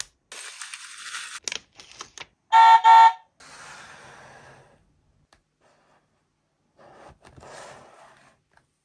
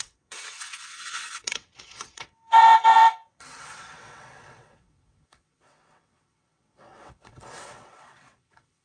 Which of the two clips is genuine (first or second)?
first